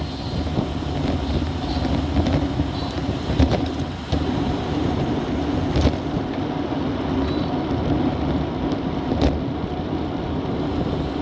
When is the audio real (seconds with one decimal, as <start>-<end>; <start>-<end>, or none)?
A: 0.0-3.0; 5.3-11.2